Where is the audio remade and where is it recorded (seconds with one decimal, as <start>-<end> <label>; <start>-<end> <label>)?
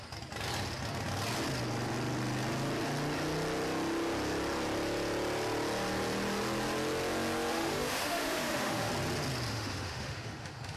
0.0-7.5 recorded; 7.5-8.9 remade; 8.9-9.5 recorded; 9.5-10.8 remade